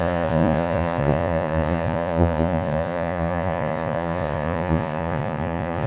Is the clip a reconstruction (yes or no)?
yes